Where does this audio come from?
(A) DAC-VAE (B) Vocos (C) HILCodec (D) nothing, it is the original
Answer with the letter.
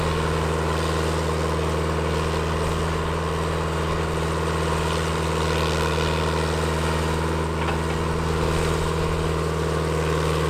D